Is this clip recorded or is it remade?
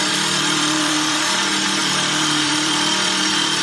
remade